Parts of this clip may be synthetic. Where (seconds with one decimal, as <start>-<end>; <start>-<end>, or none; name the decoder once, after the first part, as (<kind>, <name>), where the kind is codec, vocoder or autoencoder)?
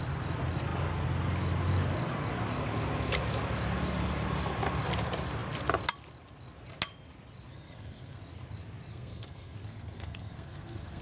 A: 7.5-8.2 (codec, SNAC); 8.9-11.0